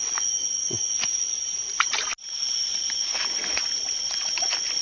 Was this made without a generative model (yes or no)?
yes